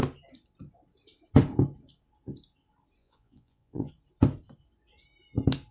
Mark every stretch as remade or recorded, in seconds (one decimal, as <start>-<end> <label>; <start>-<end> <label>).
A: 0.0-3.0 recorded; 3.0-3.9 remade; 3.9-5.7 recorded